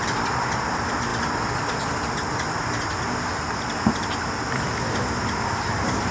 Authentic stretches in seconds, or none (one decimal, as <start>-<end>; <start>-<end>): 0.0-6.1